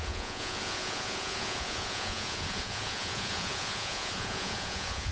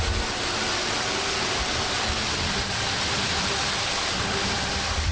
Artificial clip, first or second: first